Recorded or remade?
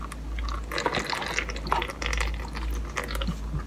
recorded